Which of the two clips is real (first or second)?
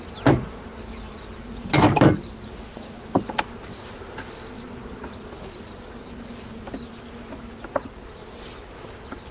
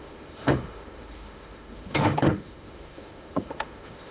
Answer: first